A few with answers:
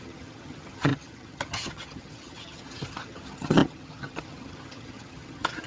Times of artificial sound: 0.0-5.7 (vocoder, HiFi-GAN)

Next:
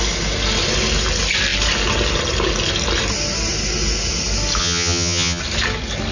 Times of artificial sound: 4.6-5.4 (vocoder, HiFi-GAN)

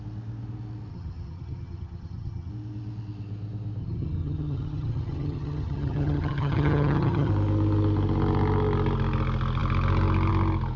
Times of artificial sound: 0.9-2.5 (vocoder, HiFi-GAN); 3.8-7.3

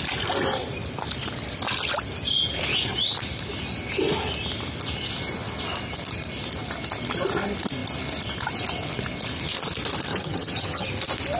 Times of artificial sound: 10.1-10.9 (vocoder, HiFi-GAN)

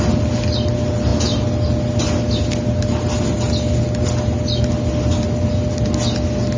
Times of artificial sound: none

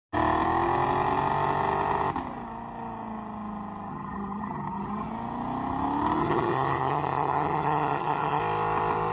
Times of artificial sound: 3.9-5.1 (vocoder, HiFi-GAN); 6.2-8.4

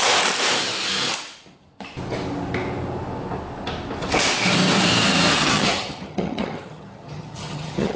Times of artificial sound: 5.4-8.0 (vocoder, HiFi-GAN)